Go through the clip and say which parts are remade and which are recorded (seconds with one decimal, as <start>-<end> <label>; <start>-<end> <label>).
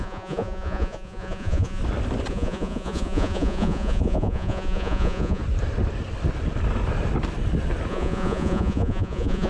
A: 0.0-1.8 remade; 1.8-2.3 recorded; 2.3-5.4 remade; 5.4-7.9 recorded; 7.9-9.5 remade